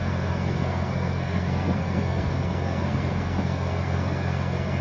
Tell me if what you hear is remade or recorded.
remade